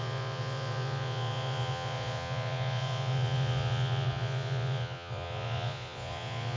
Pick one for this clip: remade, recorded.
remade